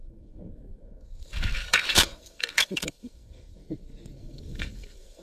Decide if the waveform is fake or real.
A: fake